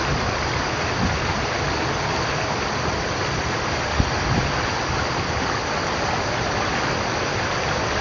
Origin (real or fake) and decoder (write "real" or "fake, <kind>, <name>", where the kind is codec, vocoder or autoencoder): real